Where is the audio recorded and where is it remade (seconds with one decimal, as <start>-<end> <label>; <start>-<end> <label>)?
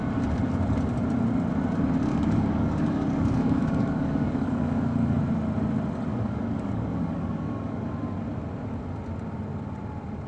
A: 0.0-2.1 recorded; 2.1-5.2 remade; 5.2-6.1 recorded; 6.1-7.9 remade; 7.9-10.3 recorded